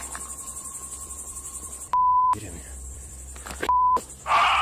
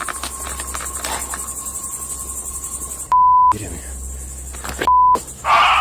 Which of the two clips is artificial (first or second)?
first